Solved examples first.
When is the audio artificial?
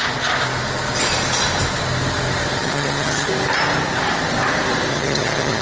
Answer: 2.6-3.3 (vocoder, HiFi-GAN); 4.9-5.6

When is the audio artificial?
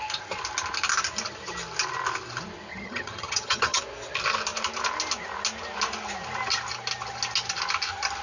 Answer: 2.7-3.8 (vocoder, HiFi-GAN)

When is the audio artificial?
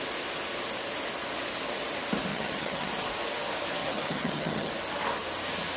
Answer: 2.3-2.9 (vocoder, HiFi-GAN); 3.8-4.7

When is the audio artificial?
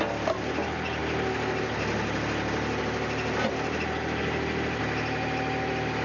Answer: none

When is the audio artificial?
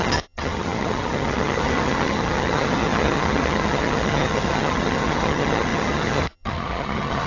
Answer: 0.0-7.3 (vocoder, HiFi-GAN)